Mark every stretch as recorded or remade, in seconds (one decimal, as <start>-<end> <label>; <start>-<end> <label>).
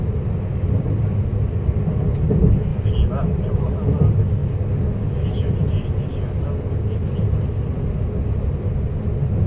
0.0-9.5 recorded